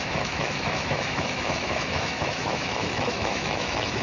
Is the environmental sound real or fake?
fake